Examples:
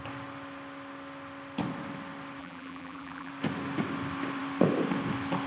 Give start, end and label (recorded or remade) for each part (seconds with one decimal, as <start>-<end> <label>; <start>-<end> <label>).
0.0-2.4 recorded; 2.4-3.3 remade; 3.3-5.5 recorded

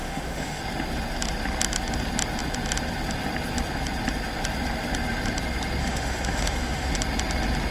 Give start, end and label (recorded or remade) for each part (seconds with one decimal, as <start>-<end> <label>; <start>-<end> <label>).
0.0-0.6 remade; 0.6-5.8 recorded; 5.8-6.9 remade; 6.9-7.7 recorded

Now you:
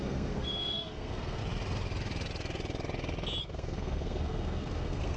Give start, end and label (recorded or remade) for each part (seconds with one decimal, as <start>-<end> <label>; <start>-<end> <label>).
0.0-1.4 remade; 1.4-3.4 recorded; 3.4-5.2 remade